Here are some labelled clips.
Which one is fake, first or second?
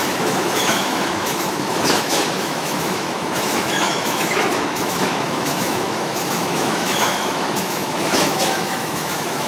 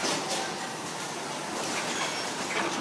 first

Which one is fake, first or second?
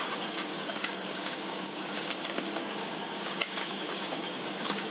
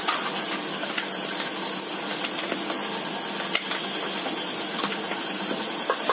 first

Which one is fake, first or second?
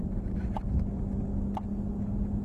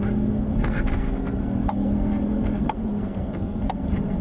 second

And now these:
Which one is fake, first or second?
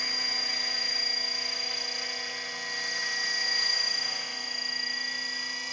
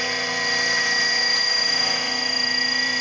second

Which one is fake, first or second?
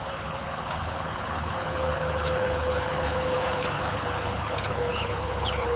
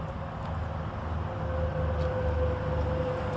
first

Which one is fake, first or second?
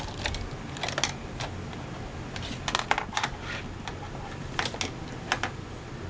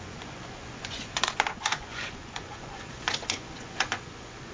second